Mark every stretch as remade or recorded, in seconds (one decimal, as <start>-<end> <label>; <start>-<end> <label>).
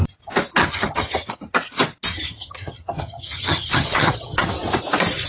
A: 0.0-0.6 recorded; 0.6-1.3 remade; 1.3-2.1 recorded; 2.1-4.5 remade; 4.5-5.3 recorded